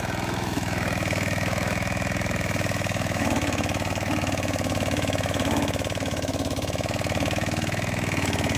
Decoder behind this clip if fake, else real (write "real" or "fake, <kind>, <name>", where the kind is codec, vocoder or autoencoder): fake, autoencoder, DAC-VAE